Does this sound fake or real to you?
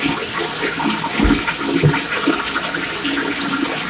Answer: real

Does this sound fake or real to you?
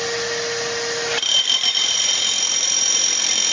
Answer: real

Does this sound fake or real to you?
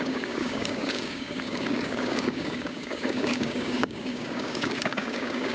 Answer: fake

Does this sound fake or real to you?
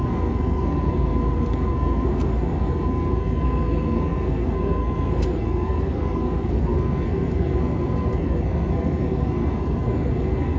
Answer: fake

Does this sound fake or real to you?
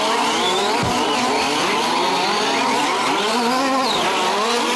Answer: real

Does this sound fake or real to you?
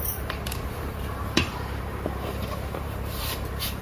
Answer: fake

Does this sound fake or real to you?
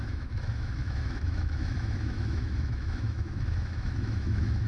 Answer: fake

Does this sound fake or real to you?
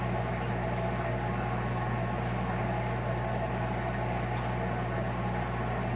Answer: real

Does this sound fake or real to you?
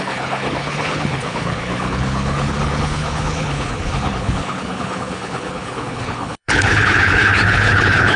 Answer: fake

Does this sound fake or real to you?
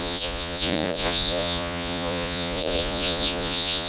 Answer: fake